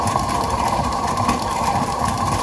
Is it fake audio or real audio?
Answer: fake